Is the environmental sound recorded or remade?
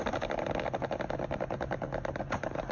recorded